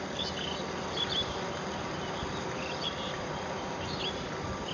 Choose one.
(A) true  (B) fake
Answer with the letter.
A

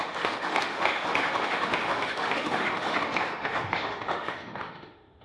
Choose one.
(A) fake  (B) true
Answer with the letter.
A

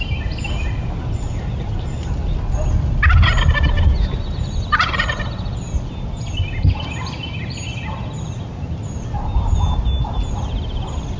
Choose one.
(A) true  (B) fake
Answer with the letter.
A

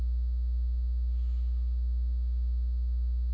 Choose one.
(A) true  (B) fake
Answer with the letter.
A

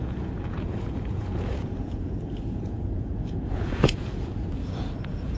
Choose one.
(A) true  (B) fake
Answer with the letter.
B